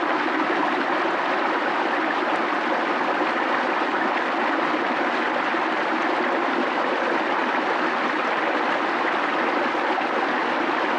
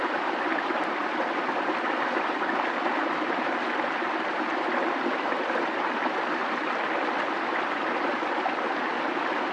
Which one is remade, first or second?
second